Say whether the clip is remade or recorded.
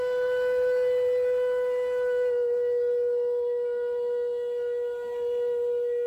recorded